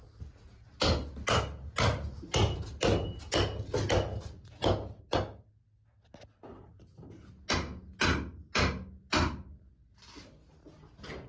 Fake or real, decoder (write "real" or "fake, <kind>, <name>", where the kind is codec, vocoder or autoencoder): real